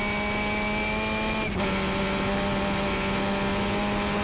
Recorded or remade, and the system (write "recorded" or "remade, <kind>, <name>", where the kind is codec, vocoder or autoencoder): recorded